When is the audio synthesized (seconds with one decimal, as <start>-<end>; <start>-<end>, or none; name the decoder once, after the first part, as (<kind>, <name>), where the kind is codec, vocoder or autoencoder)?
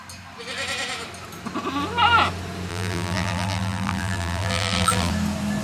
2.7-5.1 (vocoder, BigVGAN v2)